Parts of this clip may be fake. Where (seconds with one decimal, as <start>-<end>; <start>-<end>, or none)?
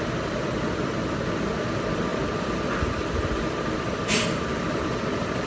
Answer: 0.0-5.5